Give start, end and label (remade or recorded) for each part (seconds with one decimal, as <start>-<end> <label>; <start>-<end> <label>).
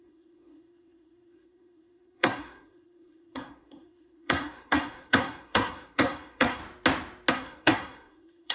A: 0.0-6.6 remade; 6.6-7.3 recorded; 7.3-8.5 remade